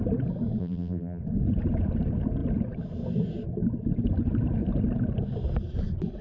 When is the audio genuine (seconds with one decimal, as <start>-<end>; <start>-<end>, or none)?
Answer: 0.0-0.6; 1.2-6.2